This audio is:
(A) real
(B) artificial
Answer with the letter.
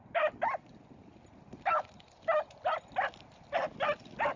A